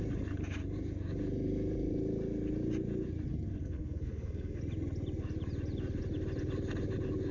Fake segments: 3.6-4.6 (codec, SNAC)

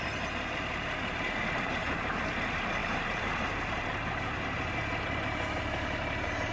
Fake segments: 0.0-6.5 (vocoder, BigVGAN v2)

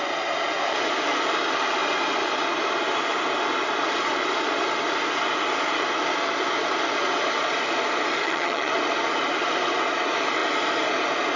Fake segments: 8.2-8.7 (vocoder, HiFi-GAN)